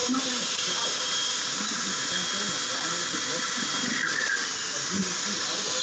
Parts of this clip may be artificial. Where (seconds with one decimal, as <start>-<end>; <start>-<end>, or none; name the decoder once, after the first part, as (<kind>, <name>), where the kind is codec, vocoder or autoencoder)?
0.0-2.1 (vocoder, BigVGAN v2)